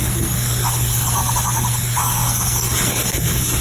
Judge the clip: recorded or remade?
remade